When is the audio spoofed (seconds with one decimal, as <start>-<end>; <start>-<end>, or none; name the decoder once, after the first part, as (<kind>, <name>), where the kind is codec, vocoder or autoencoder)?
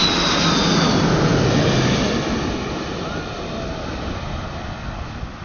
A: none